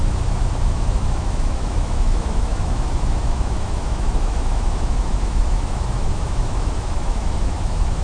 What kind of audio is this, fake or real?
fake